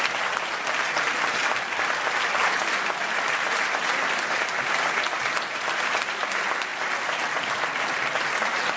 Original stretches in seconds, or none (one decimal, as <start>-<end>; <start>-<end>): 0.0-8.8